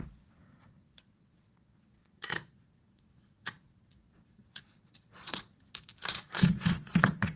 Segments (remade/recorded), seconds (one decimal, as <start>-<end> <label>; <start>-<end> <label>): 0.0-5.5 remade; 5.5-6.1 recorded; 6.1-7.4 remade